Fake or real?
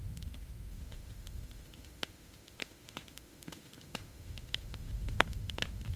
fake